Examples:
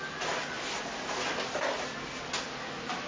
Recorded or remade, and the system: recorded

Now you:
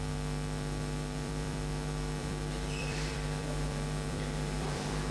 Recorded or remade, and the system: remade, vocoder, BigVGAN v2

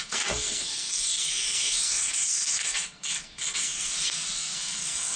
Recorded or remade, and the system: remade, codec, SNAC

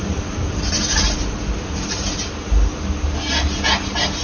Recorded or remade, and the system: recorded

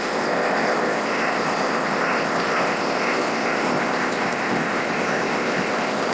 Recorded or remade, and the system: remade, codec, ZipCodec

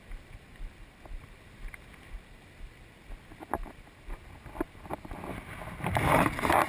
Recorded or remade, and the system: recorded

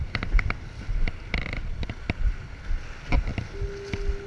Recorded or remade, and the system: recorded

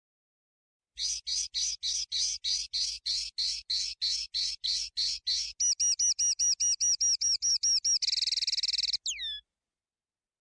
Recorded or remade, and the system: recorded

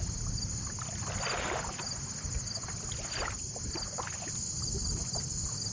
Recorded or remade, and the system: recorded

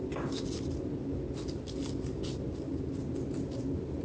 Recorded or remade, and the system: recorded